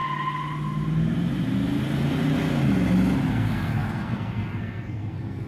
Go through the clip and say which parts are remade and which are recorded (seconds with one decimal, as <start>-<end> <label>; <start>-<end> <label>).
0.0-3.3 recorded; 3.3-5.5 remade